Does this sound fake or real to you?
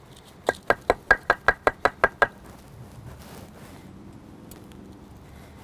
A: real